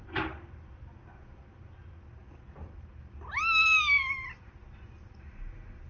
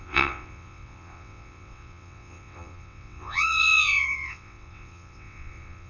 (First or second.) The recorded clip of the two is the first